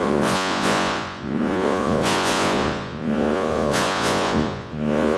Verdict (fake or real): fake